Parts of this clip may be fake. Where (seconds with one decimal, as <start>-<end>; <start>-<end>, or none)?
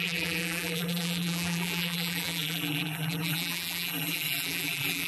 0.0-5.1